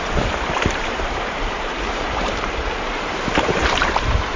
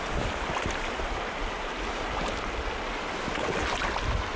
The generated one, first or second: first